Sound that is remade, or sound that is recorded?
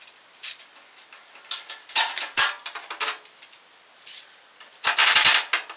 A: recorded